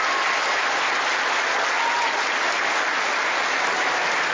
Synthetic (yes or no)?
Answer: no